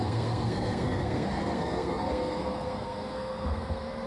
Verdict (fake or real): fake